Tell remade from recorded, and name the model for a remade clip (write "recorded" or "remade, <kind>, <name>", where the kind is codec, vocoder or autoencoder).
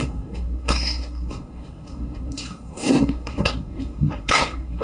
remade, codec, SNAC